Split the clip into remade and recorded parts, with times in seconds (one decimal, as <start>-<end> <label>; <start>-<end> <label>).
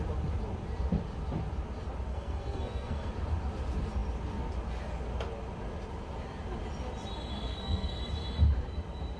0.0-2.1 recorded; 2.1-3.1 remade; 3.1-7.3 recorded; 7.3-8.0 remade; 8.0-9.2 recorded